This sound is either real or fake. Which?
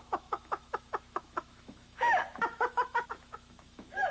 fake